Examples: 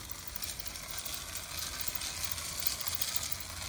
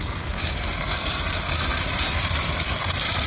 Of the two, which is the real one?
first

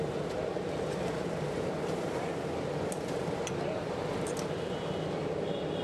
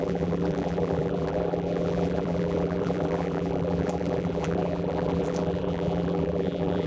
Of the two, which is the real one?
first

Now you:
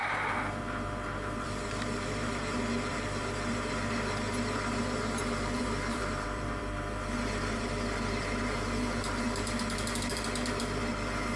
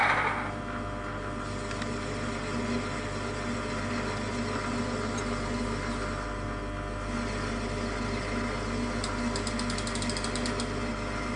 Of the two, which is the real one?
second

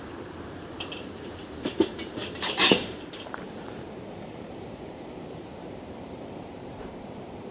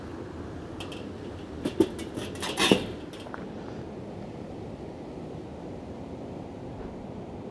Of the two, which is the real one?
second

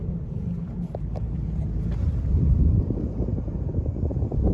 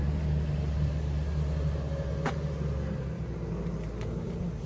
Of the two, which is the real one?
second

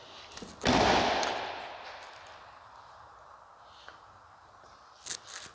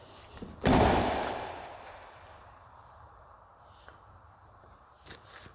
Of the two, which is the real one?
first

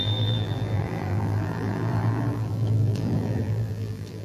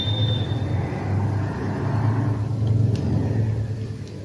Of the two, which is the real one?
second